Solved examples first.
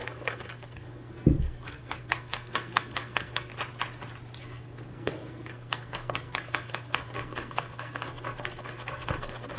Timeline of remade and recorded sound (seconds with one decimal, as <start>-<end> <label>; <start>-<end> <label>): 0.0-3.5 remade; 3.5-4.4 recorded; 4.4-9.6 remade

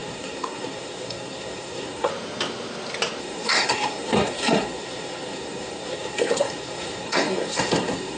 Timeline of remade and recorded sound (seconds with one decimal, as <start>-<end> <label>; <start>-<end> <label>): 0.0-2.1 remade; 2.1-3.2 recorded; 3.2-8.2 remade

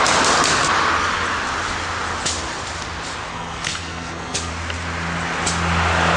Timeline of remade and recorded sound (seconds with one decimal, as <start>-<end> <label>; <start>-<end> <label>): 0.0-3.3 recorded; 3.3-4.5 remade; 4.5-6.2 recorded

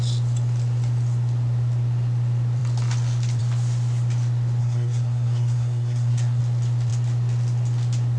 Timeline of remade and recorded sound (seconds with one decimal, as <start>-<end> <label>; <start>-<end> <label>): 0.0-4.6 recorded; 4.6-6.4 remade; 6.4-8.2 recorded

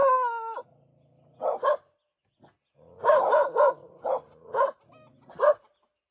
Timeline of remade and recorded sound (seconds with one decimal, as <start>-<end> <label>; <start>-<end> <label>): 0.0-6.1 recorded

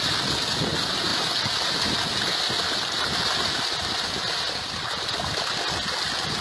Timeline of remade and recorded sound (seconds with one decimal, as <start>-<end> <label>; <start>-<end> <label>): 0.0-6.4 recorded

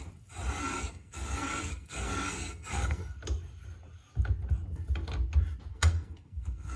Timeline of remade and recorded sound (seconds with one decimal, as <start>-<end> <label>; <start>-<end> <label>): 0.0-0.6 recorded; 0.6-3.2 remade; 3.2-5.7 recorded; 5.7-6.8 remade

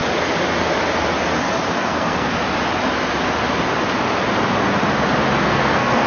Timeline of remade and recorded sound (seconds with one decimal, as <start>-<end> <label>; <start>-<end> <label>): 0.0-1.7 recorded; 1.7-2.3 remade; 2.3-5.5 recorded; 5.5-6.1 remade